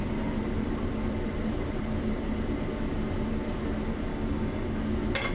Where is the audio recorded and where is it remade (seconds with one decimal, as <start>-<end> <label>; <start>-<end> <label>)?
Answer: 0.0-4.1 recorded; 4.1-4.7 remade; 4.7-5.3 recorded